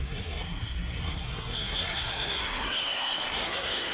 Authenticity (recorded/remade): remade